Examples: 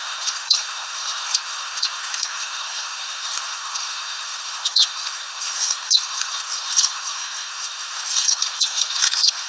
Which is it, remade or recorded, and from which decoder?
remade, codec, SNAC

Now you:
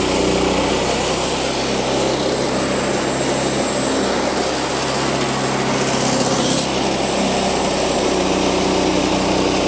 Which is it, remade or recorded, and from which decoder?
recorded